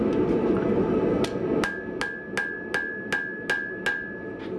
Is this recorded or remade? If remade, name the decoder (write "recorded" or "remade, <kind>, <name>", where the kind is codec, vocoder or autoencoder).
recorded